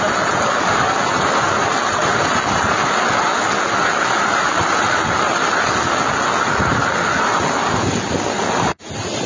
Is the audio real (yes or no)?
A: yes